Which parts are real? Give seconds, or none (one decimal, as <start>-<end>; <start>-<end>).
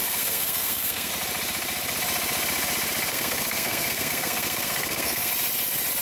1.1-3.1; 5.3-6.0